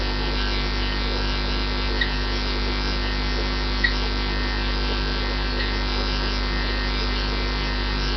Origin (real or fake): real